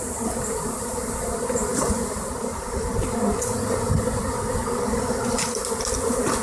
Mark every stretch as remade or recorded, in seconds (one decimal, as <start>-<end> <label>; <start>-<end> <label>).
0.0-1.7 recorded; 1.7-2.9 remade; 2.9-6.4 recorded